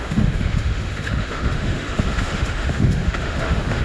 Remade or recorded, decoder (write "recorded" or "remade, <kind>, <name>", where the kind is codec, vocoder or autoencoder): remade, autoencoder, DAC-VAE